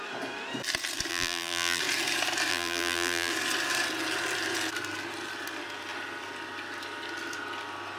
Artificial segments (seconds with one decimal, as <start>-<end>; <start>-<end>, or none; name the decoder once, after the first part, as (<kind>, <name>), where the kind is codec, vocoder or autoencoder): 1.1-1.8 (vocoder, BigVGAN v2); 2.5-3.3